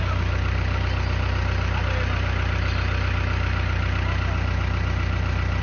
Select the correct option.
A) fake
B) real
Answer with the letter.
B